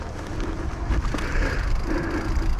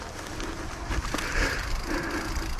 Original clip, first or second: first